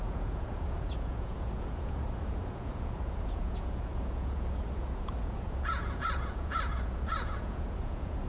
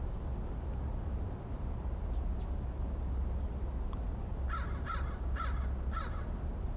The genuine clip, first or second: second